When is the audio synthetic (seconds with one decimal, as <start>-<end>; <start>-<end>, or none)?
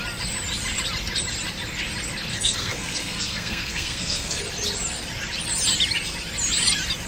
2.3-4.4